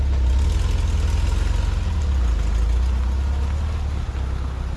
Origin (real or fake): real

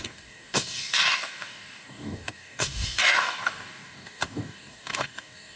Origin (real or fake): fake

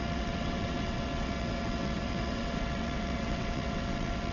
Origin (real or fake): fake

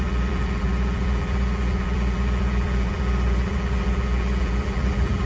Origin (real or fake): fake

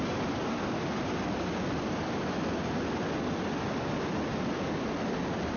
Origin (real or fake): real